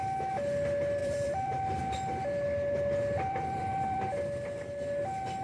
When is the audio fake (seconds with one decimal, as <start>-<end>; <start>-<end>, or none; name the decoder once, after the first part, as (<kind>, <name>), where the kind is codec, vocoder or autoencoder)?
1.0-1.8 (vocoder, BigVGAN v2); 3.3-4.0